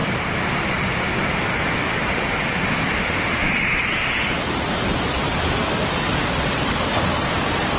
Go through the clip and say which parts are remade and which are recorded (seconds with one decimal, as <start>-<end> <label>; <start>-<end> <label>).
0.0-3.0 recorded; 3.0-3.5 remade; 3.5-7.8 recorded